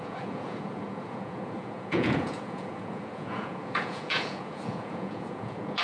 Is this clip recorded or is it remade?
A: remade